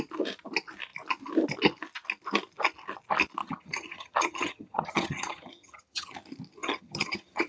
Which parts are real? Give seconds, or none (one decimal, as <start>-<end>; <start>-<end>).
0.0-3.4; 6.1-6.6